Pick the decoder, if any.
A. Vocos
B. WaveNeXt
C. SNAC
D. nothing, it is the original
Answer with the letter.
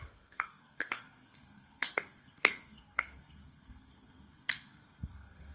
C